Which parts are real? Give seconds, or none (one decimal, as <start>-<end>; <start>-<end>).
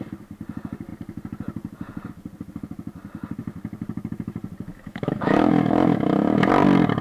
0.0-4.7; 6.5-7.0